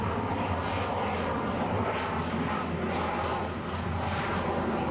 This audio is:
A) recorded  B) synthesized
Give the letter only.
A